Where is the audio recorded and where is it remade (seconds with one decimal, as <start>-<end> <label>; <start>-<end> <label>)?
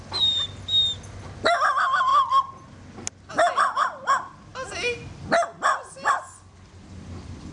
0.0-7.5 recorded